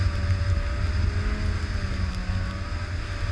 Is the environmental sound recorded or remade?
recorded